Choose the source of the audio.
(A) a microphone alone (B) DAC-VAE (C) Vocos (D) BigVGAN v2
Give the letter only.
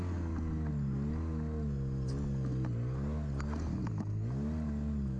A